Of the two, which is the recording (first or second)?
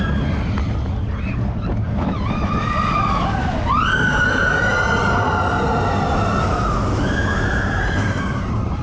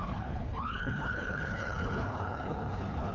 first